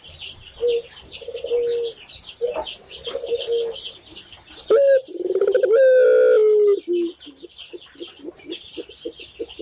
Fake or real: real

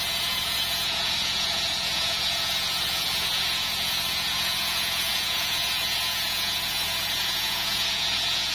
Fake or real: fake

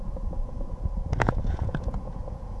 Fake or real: fake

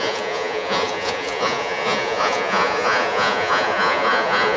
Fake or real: fake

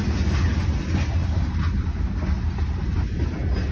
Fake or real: real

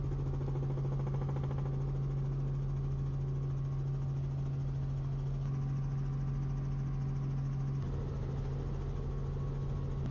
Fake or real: real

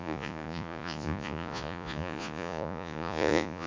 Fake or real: fake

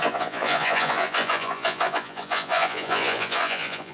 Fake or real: fake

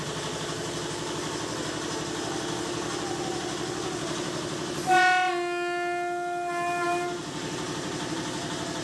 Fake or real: real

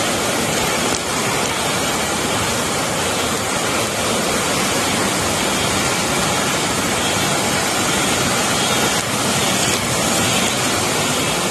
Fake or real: real